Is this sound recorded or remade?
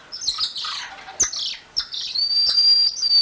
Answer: recorded